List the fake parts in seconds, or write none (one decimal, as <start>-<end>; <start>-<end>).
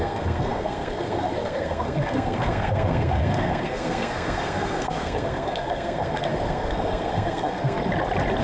0.0-7.8